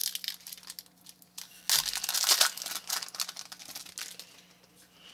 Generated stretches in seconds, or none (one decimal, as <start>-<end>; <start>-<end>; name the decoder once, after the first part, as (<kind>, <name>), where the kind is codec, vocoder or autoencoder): none